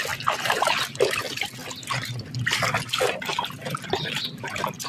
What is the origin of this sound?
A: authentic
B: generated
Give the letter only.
A